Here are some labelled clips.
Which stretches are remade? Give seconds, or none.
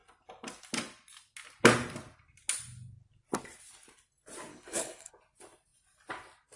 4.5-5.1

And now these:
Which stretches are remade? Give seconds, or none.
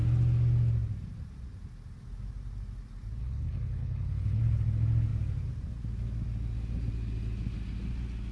3.2-4.4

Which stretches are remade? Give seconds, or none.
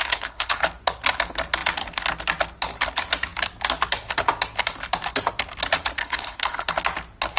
0.0-0.6; 6.0-6.7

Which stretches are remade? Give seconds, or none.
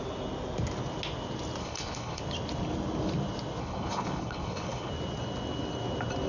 1.6-2.2; 3.6-4.9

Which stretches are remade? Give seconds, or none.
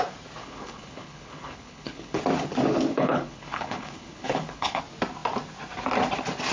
0.4-2.2; 2.9-4.8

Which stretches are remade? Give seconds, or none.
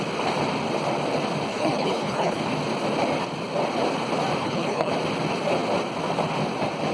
1.5-2.4; 4.4-4.9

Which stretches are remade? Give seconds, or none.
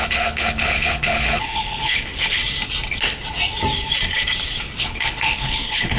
0.0-2.4; 4.8-6.0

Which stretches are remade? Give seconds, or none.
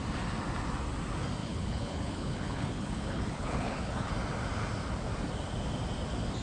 1.4-4.1